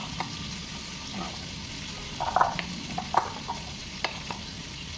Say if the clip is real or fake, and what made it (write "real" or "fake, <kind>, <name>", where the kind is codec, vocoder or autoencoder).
real